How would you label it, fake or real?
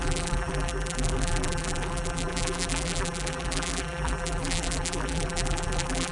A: fake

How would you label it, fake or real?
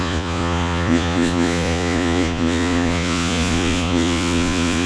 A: fake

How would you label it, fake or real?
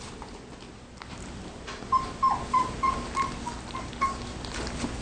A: real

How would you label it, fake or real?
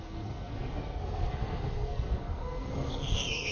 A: fake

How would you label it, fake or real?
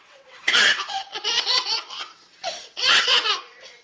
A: fake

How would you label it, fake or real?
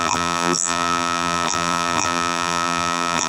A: fake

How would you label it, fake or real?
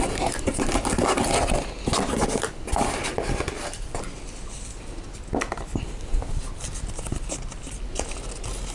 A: real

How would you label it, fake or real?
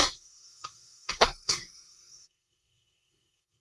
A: fake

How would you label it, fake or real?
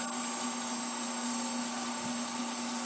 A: real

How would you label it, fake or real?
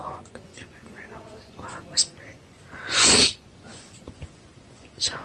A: fake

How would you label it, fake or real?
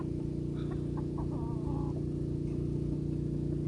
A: real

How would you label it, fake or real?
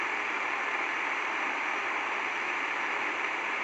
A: fake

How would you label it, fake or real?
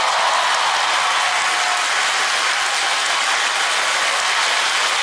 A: real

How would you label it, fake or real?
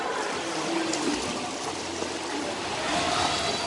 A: real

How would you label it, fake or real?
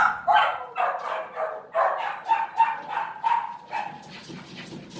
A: real